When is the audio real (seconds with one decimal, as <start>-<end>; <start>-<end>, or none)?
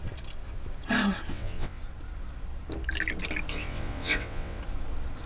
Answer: 0.0-1.3; 1.8-3.5; 4.6-5.3